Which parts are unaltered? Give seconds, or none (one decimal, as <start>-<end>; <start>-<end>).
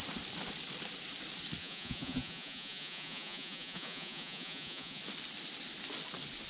0.0-1.6; 5.0-6.5